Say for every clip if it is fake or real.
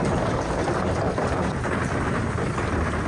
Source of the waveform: real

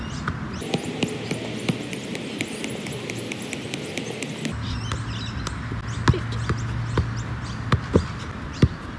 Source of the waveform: real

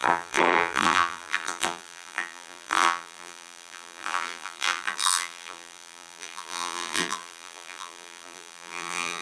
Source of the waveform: fake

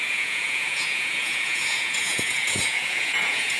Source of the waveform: fake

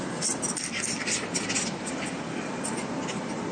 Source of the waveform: real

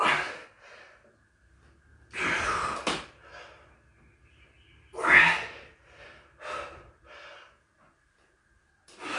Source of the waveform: real